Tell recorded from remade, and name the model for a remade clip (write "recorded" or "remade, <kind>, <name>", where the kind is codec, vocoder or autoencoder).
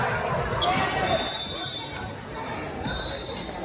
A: recorded